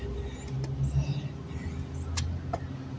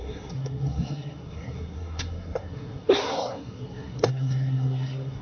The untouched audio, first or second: first